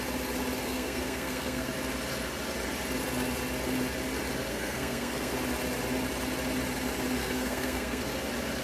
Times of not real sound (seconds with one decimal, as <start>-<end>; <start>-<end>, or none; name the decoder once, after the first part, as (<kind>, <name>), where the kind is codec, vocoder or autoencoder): 0.6-1.7 (codec, SNAC); 4.5-5.3; 7.2-8.0